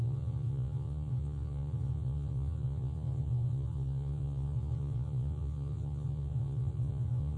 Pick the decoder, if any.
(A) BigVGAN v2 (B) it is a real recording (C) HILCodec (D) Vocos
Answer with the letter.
D